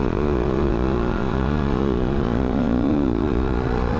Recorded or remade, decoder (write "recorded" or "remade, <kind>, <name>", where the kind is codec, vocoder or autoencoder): remade, vocoder, Vocos